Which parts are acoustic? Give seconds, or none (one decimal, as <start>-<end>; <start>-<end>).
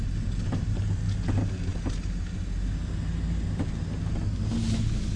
0.0-5.2